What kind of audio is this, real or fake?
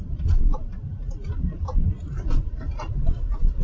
real